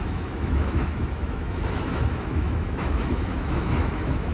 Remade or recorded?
remade